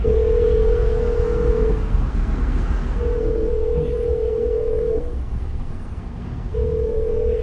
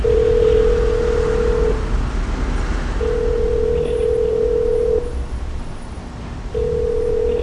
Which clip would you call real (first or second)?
second